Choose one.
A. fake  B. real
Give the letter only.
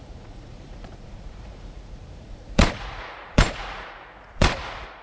A